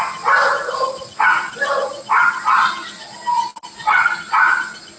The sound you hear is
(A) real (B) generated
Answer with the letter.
A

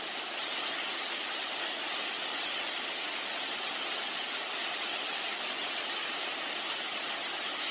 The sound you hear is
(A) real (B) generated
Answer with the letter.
A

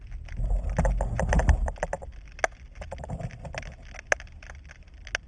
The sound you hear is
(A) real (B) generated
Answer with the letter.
A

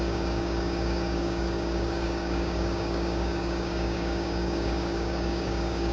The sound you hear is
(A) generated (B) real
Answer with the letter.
A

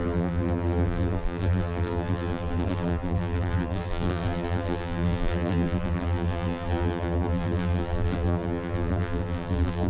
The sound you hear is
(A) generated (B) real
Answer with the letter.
A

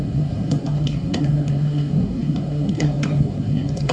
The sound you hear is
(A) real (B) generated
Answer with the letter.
B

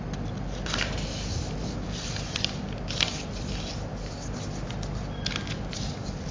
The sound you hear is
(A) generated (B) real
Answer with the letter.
B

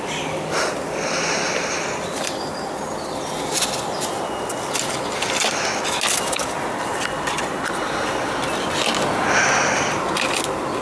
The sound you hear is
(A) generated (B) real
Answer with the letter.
B